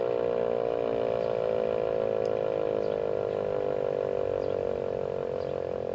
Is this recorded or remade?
recorded